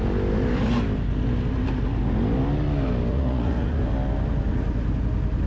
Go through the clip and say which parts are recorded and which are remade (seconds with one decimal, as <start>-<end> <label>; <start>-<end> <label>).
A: 0.0-3.1 recorded; 3.1-3.8 remade; 3.8-5.5 recorded